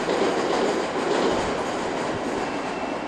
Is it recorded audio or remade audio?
recorded